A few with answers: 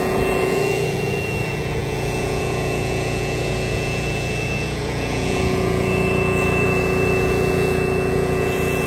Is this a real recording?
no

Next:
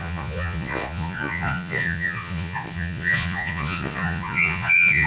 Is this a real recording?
no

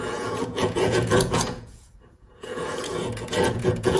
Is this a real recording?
no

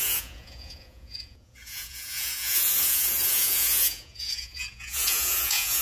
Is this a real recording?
no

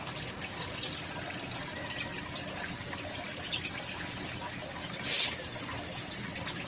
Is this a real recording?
yes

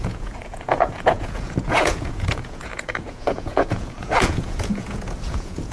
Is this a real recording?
no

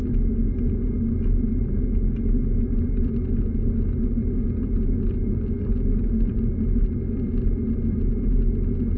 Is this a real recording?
yes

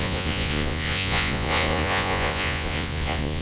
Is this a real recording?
no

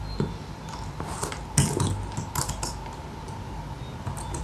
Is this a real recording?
yes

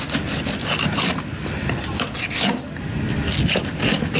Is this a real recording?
yes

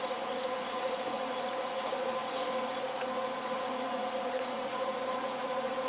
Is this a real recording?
no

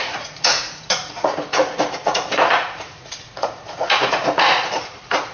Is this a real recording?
no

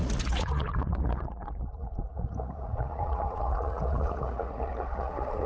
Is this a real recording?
no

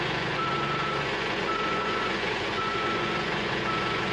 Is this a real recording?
no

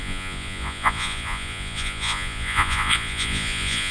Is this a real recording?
no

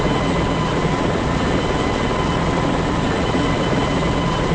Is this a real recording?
no